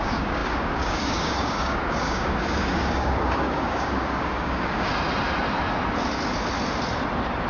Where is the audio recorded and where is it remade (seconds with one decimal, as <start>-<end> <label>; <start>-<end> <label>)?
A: 0.0-4.9 remade; 4.9-7.5 recorded